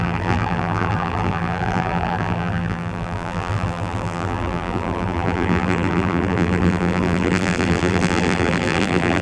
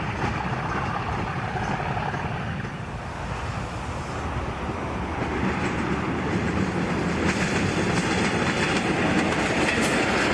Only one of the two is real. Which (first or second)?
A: second